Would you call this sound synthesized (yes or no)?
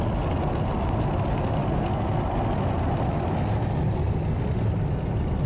no